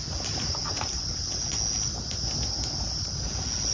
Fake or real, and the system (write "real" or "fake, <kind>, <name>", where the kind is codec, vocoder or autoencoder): real